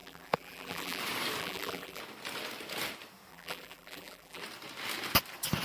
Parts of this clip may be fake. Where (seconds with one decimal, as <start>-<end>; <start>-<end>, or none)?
0.0-1.0; 1.4-2.0; 3.3-4.4